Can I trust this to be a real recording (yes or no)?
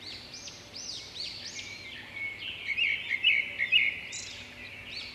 yes